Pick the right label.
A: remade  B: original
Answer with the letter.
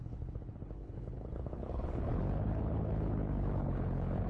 A